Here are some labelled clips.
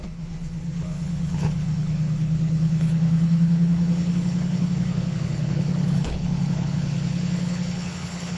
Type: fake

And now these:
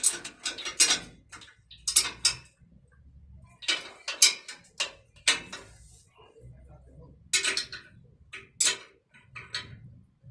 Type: real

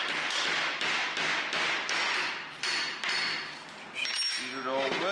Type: real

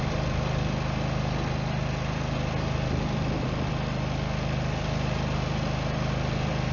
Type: real